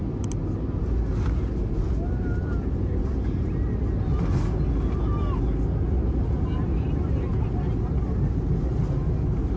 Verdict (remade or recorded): recorded